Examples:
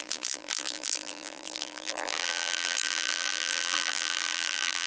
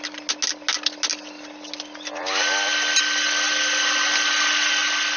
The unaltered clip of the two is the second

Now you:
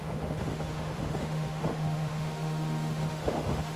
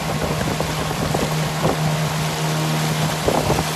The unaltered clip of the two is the second